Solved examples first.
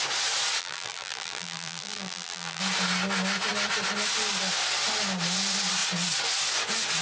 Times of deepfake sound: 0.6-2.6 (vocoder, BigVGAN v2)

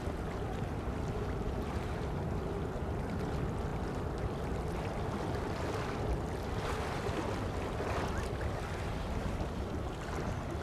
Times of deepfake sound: none

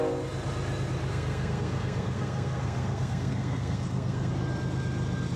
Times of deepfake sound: 1.1-4.3 (codec, SNAC)